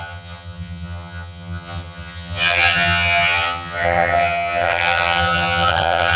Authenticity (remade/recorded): remade